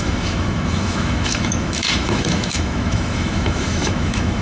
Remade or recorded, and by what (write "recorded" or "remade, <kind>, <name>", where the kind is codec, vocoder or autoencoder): remade, autoencoder, DAC-VAE